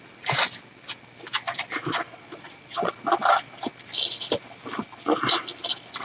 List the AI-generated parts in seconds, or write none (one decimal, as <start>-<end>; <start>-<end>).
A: 2.1-2.9